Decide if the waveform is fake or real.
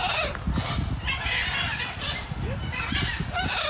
real